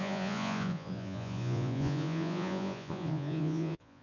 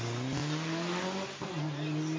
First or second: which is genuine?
second